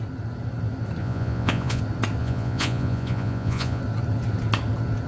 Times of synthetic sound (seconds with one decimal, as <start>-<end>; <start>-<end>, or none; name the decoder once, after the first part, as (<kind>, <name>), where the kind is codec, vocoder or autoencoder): 1.0-1.8 (vocoder, Vocos); 2.2-3.8